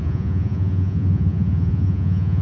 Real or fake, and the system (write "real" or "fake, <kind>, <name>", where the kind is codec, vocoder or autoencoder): fake, vocoder, Vocos